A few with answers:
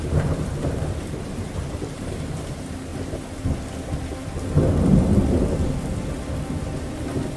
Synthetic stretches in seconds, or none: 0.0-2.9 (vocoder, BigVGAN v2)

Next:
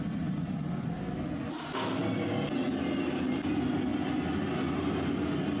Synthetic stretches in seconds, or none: none